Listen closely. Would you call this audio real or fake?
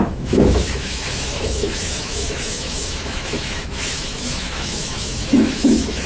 fake